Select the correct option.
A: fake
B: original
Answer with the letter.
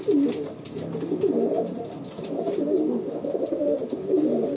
B